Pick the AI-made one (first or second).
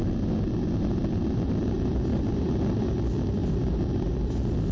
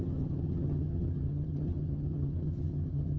second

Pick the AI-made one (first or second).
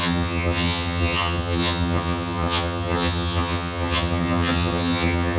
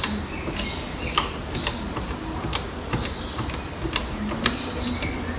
first